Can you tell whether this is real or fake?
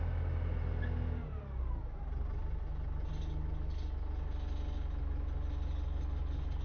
real